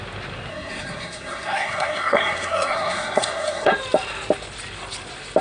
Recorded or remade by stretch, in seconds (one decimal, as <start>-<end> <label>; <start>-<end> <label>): 0.0-0.5 recorded; 0.5-3.7 remade; 3.7-5.4 recorded